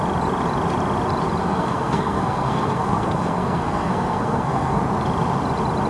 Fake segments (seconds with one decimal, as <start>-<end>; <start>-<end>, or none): 1.4-4.8